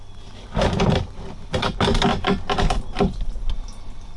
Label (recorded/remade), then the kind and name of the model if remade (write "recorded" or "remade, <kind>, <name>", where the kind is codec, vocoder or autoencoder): recorded